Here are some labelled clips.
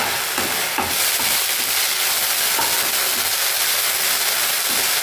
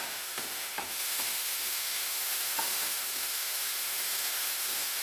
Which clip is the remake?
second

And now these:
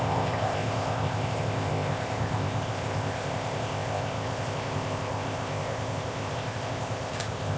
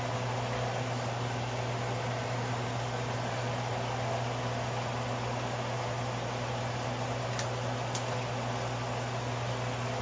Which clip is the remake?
first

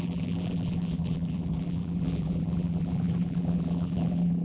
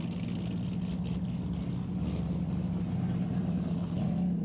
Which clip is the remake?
first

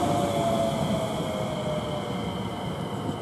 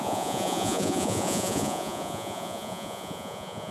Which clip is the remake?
second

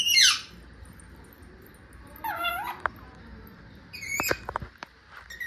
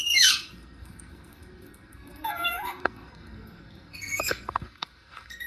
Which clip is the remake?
second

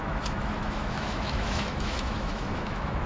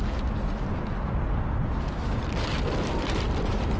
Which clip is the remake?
first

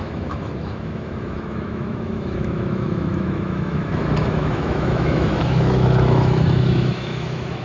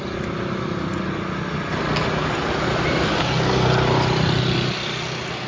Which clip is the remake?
first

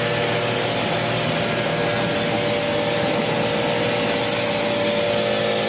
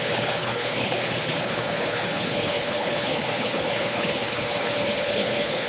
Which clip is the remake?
second